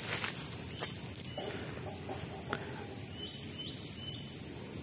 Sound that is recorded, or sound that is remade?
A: recorded